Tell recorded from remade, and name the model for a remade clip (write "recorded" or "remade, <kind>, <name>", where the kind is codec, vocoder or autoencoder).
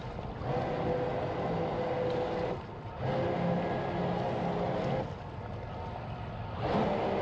recorded